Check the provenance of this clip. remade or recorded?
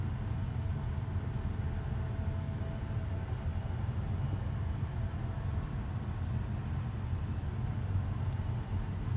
recorded